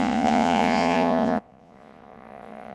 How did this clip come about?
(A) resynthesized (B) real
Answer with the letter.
A